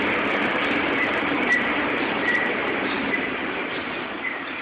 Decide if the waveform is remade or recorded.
recorded